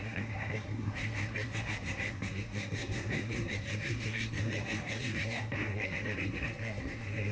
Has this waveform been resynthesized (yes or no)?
yes